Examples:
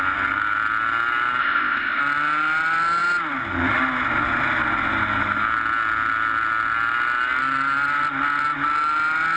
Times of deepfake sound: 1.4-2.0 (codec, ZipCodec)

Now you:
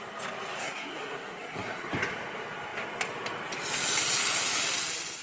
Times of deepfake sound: 0.6-1.9 (codec, SNAC)

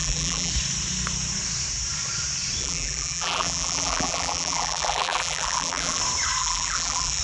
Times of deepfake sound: 0.0-0.5 (vocoder, BigVGAN v2); 2.6-6.0; 6.4-7.2

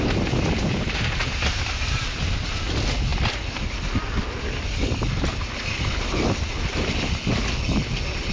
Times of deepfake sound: none

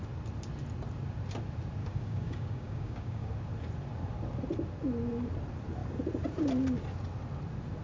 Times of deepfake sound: 1.8-3.3 (codec, DAC)

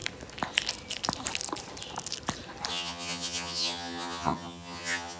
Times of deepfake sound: 2.7-5.2 (vocoder, HiFi-GAN)

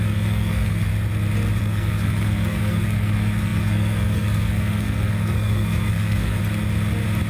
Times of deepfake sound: 0.0-0.9 (codec, SNAC); 1.6-6.4

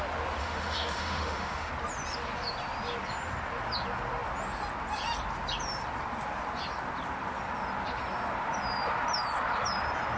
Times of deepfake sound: 0.4-1.7 (autoencoder, DAC-VAE)